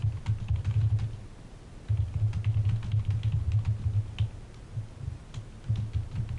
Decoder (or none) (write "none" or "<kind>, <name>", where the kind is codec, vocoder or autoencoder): none